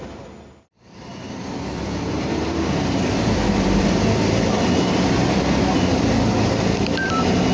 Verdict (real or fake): fake